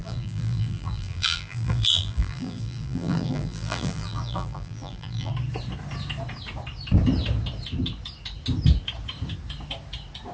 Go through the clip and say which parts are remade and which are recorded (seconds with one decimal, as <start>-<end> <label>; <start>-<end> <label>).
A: 0.0-5.3 remade; 5.3-10.3 recorded